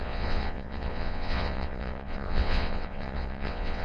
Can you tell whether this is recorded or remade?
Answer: remade